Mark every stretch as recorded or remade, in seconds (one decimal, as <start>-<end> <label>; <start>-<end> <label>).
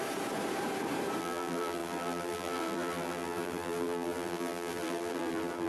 0.0-1.2 recorded; 1.2-5.7 remade